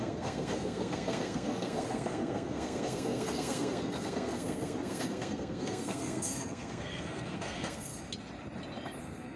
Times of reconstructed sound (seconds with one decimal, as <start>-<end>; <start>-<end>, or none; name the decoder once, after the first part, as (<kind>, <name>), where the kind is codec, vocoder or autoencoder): 0.0-7.9 (codec, SNAC); 9.0-9.4